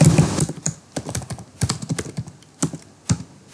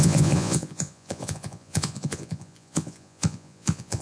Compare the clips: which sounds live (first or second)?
first